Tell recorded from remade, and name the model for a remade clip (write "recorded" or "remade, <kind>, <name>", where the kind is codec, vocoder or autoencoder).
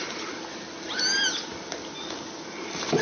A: recorded